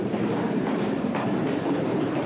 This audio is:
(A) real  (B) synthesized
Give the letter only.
B